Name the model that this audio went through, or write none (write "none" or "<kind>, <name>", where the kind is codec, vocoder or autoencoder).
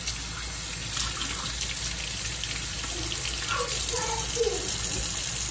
none